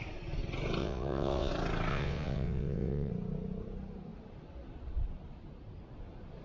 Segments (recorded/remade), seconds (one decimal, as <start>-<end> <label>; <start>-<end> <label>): 0.0-0.8 recorded; 0.8-1.5 remade; 1.5-1.9 recorded; 1.9-3.1 remade; 3.1-6.4 recorded